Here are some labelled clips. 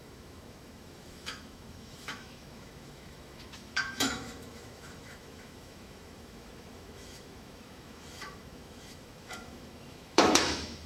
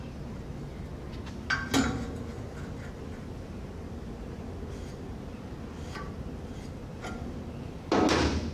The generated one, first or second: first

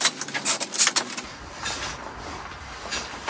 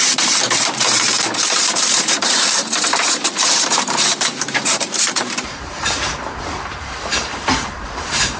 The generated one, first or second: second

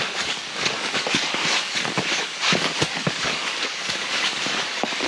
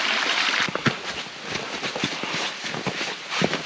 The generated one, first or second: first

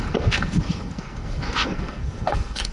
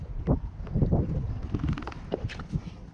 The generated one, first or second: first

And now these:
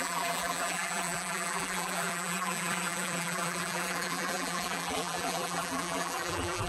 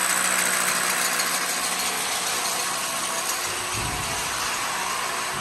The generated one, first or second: first